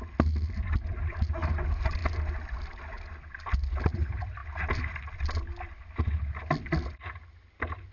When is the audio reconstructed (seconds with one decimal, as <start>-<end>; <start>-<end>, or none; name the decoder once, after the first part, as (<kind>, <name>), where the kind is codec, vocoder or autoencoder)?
none